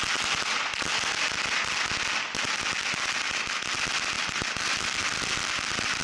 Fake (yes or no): no